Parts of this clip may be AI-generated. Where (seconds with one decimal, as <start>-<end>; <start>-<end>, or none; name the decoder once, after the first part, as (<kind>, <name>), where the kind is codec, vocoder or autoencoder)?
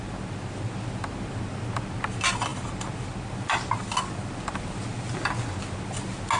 none